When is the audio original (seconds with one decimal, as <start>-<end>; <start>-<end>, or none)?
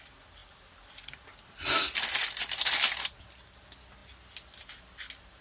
0.0-5.4